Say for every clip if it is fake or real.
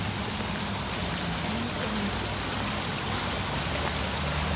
real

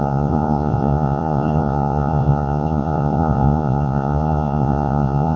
fake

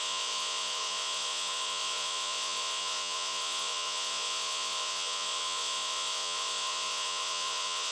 fake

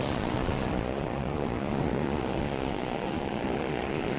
fake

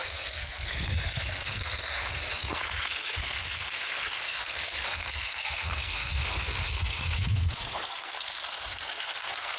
fake